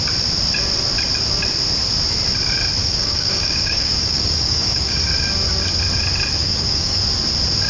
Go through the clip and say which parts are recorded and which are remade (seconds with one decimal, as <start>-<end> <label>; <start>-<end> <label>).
0.0-2.8 recorded; 2.8-5.0 remade; 5.0-6.4 recorded; 6.4-7.0 remade; 7.0-7.7 recorded